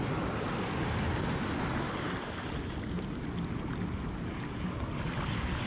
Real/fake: real